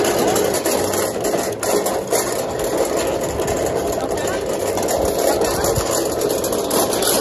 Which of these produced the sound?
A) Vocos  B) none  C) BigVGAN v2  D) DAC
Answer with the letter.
B